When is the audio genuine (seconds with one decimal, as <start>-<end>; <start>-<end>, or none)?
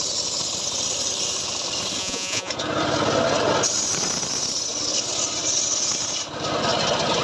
0.0-2.0; 2.5-7.2